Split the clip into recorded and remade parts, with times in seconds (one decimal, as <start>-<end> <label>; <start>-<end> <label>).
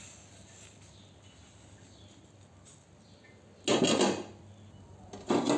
0.0-5.6 recorded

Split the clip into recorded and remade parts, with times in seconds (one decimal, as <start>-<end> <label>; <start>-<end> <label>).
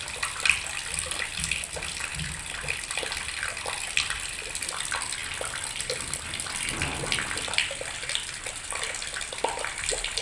0.0-10.2 recorded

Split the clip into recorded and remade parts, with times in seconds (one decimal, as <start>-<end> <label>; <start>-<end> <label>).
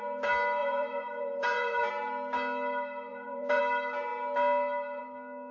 0.0-0.6 recorded; 0.6-1.9 remade; 1.9-3.1 recorded; 3.1-3.6 remade; 3.6-5.5 recorded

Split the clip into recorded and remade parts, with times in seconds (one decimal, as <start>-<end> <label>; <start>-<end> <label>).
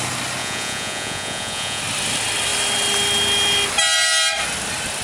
0.0-0.4 recorded; 0.4-1.8 remade; 1.8-5.0 recorded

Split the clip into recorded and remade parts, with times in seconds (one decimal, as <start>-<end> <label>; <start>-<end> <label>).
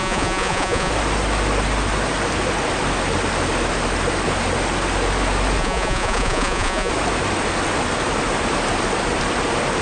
0.0-0.9 remade; 0.9-5.6 recorded; 5.6-6.9 remade; 6.9-9.8 recorded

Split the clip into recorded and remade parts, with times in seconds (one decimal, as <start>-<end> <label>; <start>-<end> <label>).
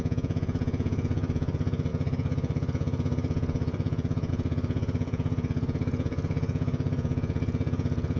0.0-8.2 remade